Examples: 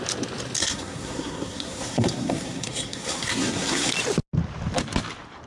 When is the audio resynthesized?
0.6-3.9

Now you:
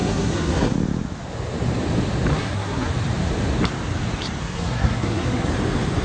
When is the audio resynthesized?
0.0-0.7; 2.3-2.9; 4.4-5.5

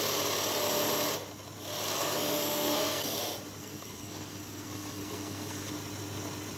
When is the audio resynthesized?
1.9-3.2; 3.6-5.7

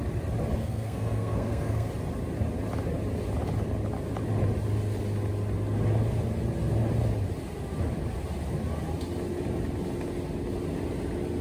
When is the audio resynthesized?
0.6-1.9

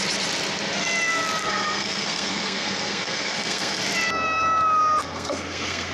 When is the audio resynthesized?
1.4-3.8; 5.0-5.9

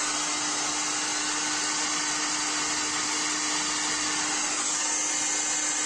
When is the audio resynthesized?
none

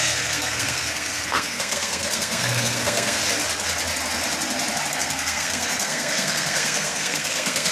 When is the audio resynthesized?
0.0-3.2; 4.9-7.7